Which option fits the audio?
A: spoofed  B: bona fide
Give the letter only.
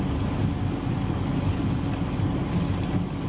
B